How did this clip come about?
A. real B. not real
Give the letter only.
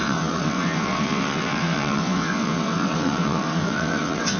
B